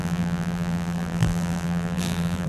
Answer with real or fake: fake